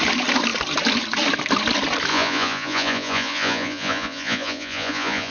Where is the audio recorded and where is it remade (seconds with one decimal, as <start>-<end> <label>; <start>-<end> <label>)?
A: 0.0-2.1 recorded; 2.1-5.3 remade